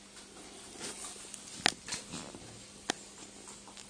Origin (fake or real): real